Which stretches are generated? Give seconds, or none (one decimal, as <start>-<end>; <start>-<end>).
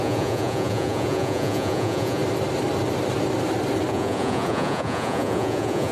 0.0-2.2; 3.9-5.9